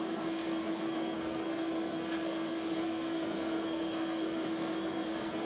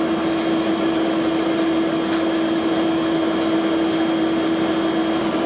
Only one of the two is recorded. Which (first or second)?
second